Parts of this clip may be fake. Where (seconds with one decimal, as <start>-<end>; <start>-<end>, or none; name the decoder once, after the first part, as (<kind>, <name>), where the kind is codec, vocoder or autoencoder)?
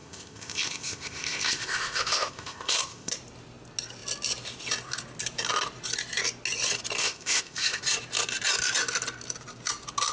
0.0-3.1 (codec, ZipCodec); 7.0-7.8